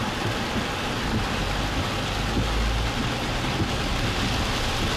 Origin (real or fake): real